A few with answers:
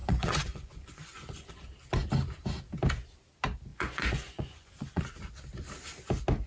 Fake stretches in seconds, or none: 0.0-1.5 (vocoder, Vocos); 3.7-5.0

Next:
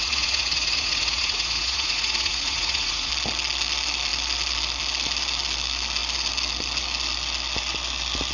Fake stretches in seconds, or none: 0.0-3.1 (vocoder, Vocos)